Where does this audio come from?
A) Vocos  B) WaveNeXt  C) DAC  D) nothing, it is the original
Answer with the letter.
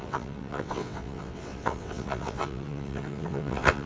B